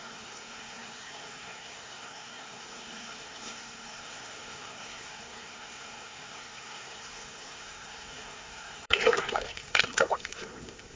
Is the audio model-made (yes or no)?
yes